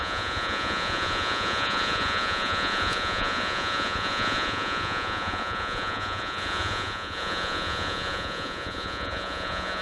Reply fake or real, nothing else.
fake